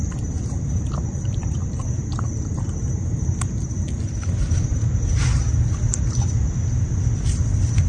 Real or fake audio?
real